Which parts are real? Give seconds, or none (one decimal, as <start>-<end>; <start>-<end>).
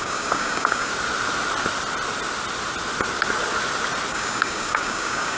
0.9-4.1